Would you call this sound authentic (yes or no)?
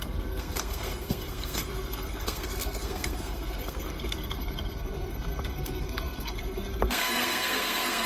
no